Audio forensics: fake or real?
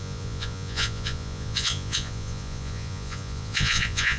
fake